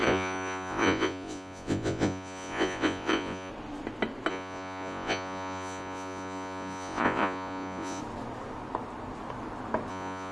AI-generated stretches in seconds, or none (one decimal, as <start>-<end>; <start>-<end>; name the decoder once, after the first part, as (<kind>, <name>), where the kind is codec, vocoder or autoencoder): 0.0-3.5 (vocoder, Vocos); 4.3-8.0; 9.9-10.3